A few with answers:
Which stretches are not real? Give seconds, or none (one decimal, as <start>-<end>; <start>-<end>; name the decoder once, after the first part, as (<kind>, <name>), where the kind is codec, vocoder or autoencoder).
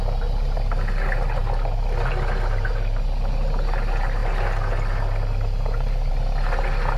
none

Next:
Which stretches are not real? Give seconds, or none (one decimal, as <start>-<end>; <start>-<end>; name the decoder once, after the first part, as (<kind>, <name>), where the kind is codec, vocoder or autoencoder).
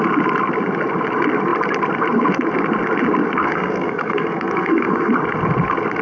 3.4-5.1 (codec, SNAC)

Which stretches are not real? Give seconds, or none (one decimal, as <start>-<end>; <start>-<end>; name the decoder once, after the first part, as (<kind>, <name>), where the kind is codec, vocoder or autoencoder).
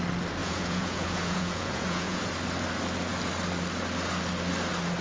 0.4-2.3 (vocoder, Vocos)